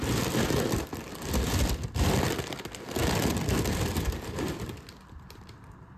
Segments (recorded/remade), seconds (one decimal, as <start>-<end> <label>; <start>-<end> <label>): 0.0-6.0 recorded